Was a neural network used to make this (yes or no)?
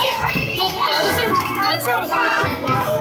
yes